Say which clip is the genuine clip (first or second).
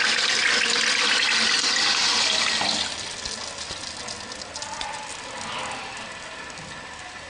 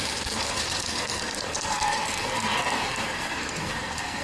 first